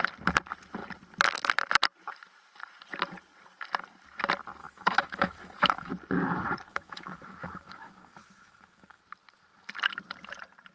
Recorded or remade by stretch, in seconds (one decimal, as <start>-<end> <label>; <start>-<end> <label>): 0.0-4.6 recorded; 4.6-5.9 remade; 5.9-6.7 recorded; 6.7-9.0 remade; 9.0-10.7 recorded